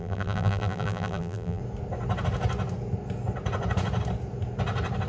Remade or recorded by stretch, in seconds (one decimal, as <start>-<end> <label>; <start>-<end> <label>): 0.0-1.6 remade; 1.6-5.1 recorded